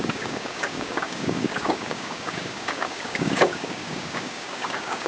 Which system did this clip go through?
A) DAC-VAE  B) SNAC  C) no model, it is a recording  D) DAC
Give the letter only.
D